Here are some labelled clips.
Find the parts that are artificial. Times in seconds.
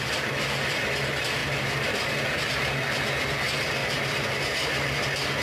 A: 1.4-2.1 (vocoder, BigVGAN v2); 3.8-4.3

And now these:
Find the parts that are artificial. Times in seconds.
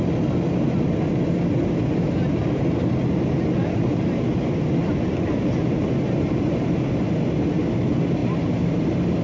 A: 4.8-6.9 (vocoder, BigVGAN v2); 8.2-9.2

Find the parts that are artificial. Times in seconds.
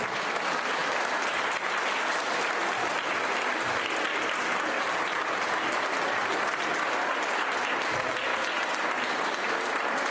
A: none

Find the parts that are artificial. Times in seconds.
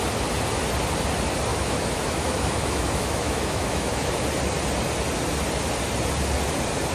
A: 1.5-4.1 (autoencoder, DAC-VAE)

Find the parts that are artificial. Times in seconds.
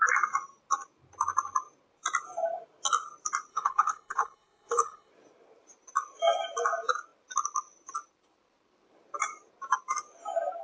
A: 3.5-5.1 (codec, HILCodec)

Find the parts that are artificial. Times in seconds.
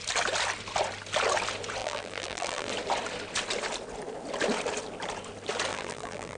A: 1.8-2.7 (vocoder, BigVGAN v2); 5.7-6.4